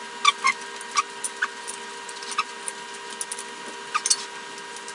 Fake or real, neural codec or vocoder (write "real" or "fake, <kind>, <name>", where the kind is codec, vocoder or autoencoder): real